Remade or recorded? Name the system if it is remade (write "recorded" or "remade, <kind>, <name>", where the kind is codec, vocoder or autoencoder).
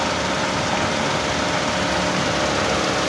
recorded